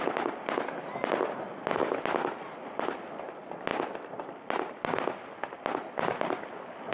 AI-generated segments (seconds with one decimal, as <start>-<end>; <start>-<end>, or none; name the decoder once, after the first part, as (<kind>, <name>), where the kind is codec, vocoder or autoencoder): none